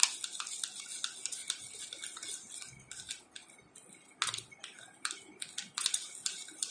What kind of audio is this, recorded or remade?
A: recorded